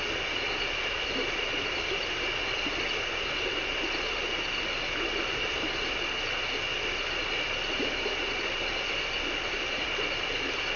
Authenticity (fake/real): real